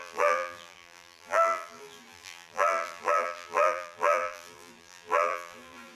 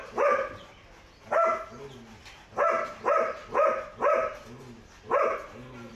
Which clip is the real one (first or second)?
second